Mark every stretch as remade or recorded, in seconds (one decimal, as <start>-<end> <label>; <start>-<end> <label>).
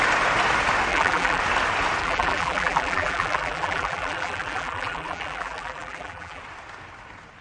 0.0-0.9 recorded; 0.9-1.4 remade; 1.4-2.0 recorded; 2.0-6.4 remade; 6.4-7.4 recorded